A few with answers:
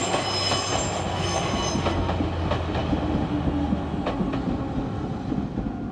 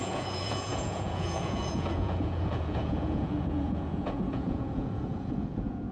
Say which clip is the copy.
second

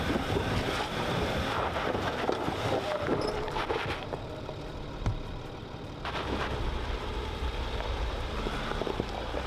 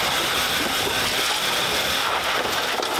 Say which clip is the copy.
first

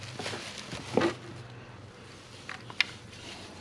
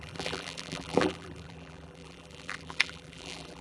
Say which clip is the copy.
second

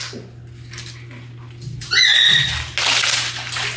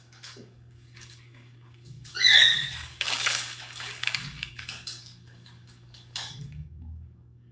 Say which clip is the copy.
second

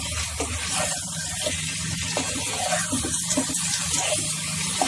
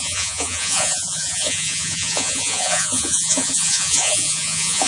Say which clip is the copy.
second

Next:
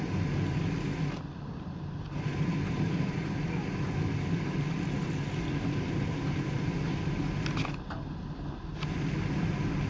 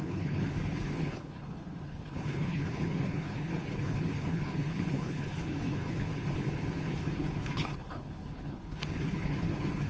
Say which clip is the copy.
second